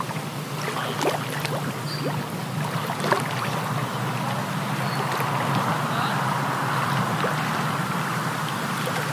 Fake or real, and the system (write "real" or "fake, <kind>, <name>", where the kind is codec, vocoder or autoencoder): real